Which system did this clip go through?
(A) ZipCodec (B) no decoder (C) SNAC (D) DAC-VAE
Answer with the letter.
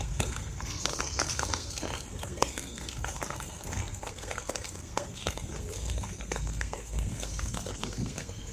C